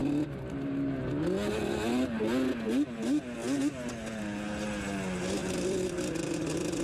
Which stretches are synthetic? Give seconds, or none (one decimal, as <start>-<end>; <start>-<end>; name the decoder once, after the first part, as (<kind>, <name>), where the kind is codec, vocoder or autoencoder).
5.4-6.8 (vocoder, BigVGAN v2)